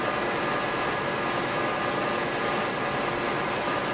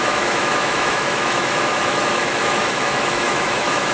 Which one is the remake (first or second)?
second